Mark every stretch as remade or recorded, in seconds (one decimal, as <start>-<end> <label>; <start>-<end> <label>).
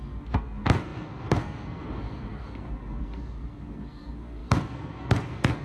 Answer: 0.0-5.6 remade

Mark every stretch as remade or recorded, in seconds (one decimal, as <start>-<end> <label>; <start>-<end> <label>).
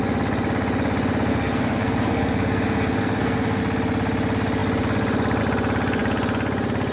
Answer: 0.0-1.3 recorded; 1.3-3.6 remade; 3.6-6.9 recorded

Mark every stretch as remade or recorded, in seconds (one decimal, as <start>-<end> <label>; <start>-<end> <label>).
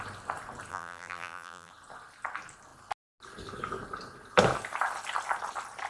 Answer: 0.0-0.7 recorded; 0.7-1.7 remade; 1.7-5.9 recorded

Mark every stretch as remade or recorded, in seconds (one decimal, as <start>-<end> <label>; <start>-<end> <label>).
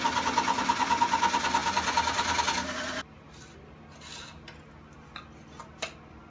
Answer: 0.0-1.6 recorded; 1.6-2.4 remade; 2.4-6.3 recorded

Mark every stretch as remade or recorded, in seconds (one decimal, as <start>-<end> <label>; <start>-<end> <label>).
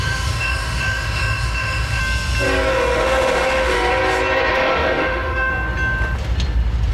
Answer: 0.0-2.0 remade; 2.0-2.7 recorded; 2.7-3.9 remade; 3.9-4.5 recorded; 4.5-5.5 remade; 5.5-6.9 recorded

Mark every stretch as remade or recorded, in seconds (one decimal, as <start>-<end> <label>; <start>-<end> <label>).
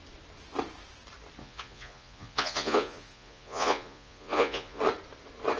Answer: 0.0-1.4 recorded; 1.4-4.8 remade; 4.8-5.6 recorded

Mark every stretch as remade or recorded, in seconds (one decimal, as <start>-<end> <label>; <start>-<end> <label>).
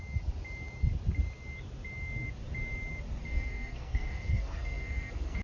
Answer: 0.0-3.2 recorded; 3.2-5.4 remade